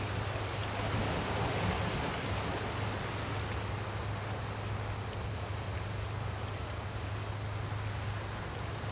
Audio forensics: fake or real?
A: real